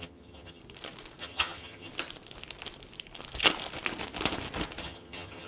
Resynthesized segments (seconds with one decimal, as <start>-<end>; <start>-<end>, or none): 0.0-0.6; 1.2-1.9; 4.8-5.5